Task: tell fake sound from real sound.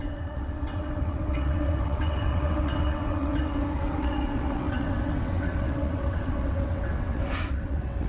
fake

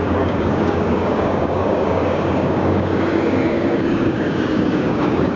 fake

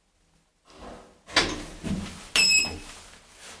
real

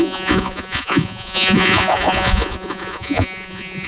fake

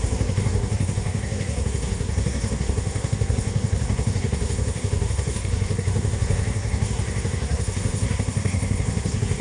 fake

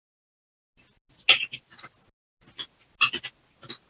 real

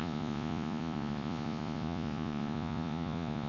fake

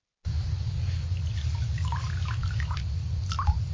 real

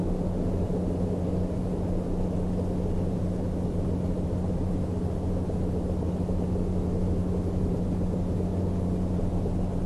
real